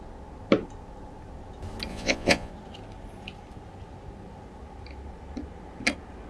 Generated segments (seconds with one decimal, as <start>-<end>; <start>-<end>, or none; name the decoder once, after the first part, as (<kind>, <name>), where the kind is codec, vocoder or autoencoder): 1.9-2.5 (vocoder, Vocos)